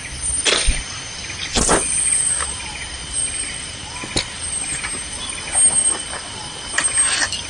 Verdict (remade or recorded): recorded